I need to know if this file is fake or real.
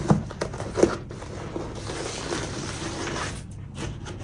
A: real